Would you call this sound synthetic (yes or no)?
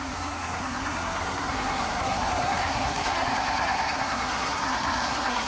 yes